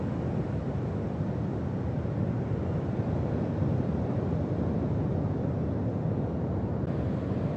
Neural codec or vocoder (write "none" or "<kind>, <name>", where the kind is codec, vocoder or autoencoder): none